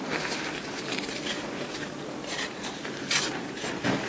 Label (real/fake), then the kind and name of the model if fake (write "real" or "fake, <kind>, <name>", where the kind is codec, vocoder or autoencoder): fake, vocoder, BigVGAN v2